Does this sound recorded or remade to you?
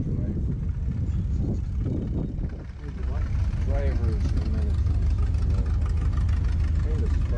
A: recorded